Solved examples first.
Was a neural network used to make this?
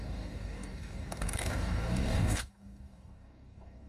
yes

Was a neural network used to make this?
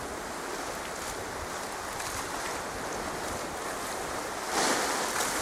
no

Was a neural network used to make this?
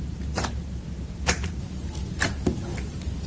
no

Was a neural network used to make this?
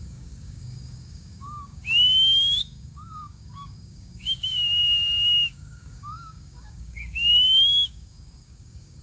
yes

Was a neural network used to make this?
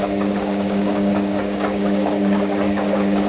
yes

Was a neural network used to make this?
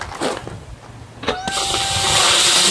no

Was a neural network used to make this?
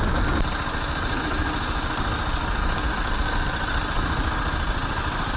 no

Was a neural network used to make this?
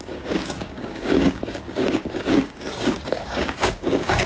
yes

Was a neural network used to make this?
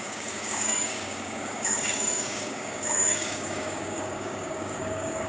yes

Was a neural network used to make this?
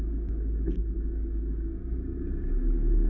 yes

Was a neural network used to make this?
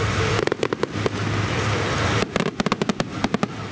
no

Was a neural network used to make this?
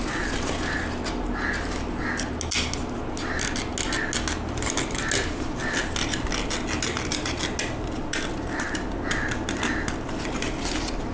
no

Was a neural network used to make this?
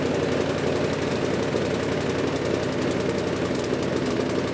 no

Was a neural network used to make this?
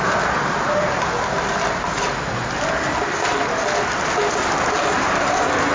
no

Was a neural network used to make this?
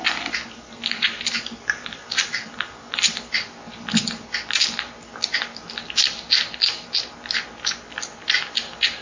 no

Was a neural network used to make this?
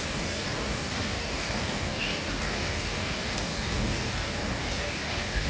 yes